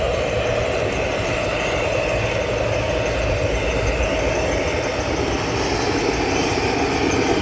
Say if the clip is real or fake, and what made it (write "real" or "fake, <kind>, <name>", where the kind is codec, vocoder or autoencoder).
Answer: real